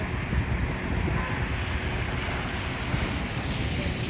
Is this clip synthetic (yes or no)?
no